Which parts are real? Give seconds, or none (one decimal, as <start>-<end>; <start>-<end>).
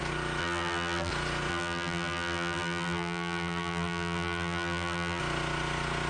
0.0-0.4; 1.1-1.5; 5.2-6.1